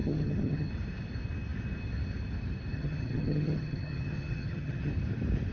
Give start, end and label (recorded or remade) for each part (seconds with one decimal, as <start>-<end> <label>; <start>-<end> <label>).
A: 0.0-0.7 remade; 0.7-2.7 recorded; 2.7-4.9 remade; 4.9-5.5 recorded

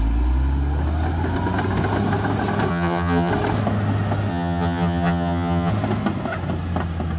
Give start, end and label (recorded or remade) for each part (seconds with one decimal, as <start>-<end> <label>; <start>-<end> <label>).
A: 0.0-2.7 recorded; 2.7-3.3 remade; 3.3-4.3 recorded; 4.3-5.7 remade; 5.7-7.2 recorded

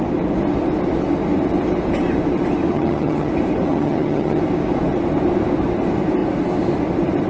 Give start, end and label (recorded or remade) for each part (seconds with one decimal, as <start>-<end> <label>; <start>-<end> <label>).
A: 0.0-2.7 recorded; 2.7-3.3 remade; 3.3-3.7 recorded; 3.7-4.4 remade; 4.4-7.3 recorded

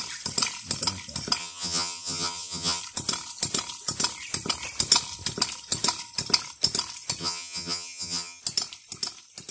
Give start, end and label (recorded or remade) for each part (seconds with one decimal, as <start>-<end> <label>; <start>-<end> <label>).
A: 0.0-1.4 recorded; 1.4-2.8 remade; 2.8-7.2 recorded; 7.2-8.4 remade; 8.4-9.5 recorded

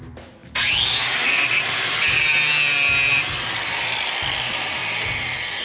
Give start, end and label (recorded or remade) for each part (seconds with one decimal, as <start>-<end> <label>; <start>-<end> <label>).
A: 0.0-5.6 recorded

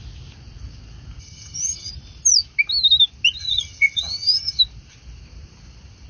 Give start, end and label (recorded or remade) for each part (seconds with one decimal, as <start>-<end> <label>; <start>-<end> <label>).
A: 0.0-1.2 recorded; 1.2-1.9 remade; 1.9-3.4 recorded; 3.4-4.6 remade; 4.6-6.1 recorded

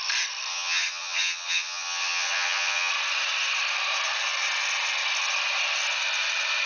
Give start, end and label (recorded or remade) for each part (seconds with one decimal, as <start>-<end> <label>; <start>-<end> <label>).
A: 0.0-0.5 recorded; 0.5-2.9 remade; 2.9-6.7 recorded

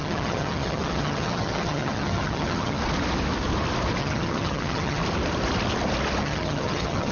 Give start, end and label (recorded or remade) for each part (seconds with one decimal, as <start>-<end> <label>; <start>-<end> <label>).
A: 0.0-2.8 remade; 2.8-4.0 recorded; 4.0-5.0 remade; 5.0-6.2 recorded; 6.2-7.1 remade